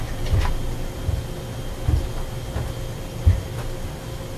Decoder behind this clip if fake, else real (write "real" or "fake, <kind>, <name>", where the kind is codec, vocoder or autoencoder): real